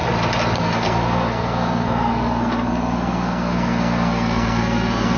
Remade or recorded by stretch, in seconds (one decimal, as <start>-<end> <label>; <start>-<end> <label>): 0.0-0.6 recorded; 0.6-5.2 remade